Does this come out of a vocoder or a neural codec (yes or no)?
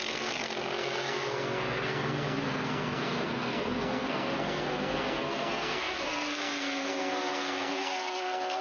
yes